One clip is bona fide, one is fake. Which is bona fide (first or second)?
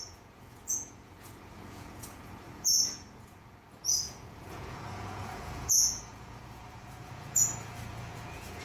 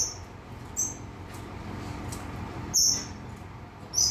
second